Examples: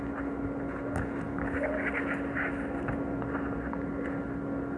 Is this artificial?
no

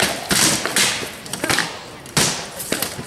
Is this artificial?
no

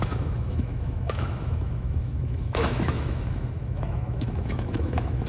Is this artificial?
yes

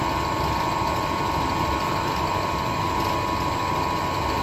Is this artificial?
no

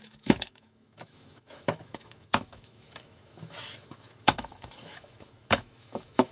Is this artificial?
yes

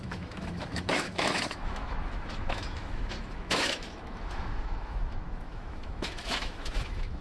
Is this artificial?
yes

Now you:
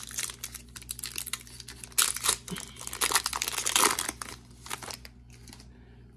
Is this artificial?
no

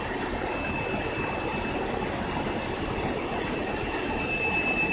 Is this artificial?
no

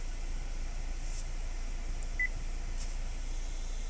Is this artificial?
no